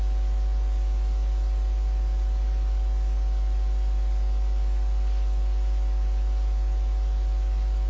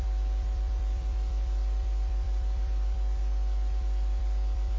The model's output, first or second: second